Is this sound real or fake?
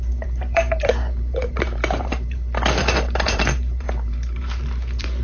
fake